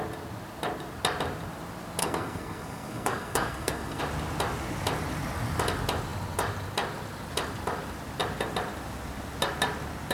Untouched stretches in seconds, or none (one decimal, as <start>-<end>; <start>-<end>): 0.0-2.0; 4.0-10.1